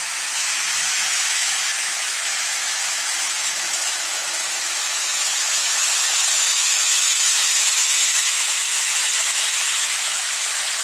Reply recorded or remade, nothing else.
remade